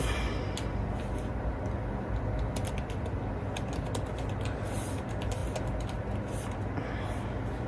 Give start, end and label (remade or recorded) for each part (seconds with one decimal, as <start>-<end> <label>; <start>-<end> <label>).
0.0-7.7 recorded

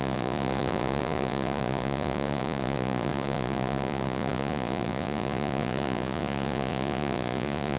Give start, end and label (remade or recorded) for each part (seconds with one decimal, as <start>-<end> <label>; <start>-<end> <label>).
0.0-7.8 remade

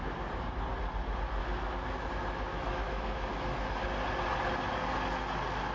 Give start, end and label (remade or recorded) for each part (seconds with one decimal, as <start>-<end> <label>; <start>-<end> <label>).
0.0-1.4 recorded; 1.4-2.1 remade; 2.1-2.5 recorded; 2.5-3.7 remade; 3.7-5.7 recorded

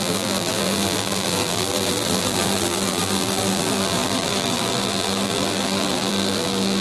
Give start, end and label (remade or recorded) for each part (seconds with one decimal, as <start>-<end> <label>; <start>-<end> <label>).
0.0-6.8 remade